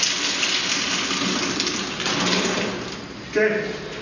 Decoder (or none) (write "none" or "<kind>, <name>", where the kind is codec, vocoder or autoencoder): none